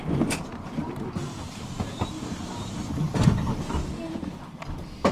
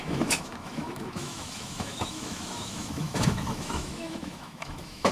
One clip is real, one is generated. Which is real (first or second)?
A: first